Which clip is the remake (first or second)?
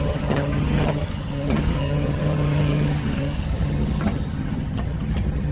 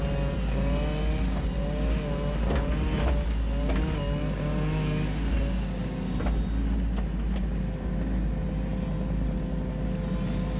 first